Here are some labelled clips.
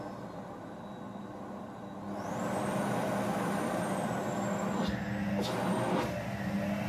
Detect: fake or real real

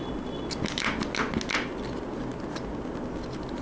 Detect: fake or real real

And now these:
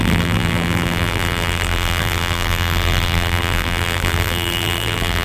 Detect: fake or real fake